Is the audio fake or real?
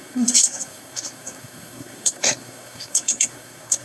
fake